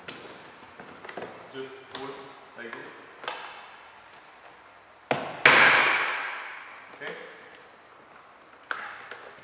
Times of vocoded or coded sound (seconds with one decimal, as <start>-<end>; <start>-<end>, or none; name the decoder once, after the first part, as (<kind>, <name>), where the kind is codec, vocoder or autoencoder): none